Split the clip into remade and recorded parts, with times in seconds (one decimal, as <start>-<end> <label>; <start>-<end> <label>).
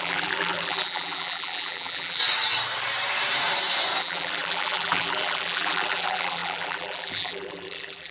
0.0-2.2 remade; 2.2-4.0 recorded; 4.0-8.1 remade